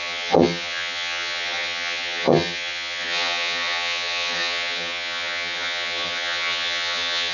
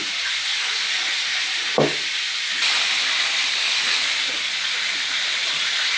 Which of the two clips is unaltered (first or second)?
second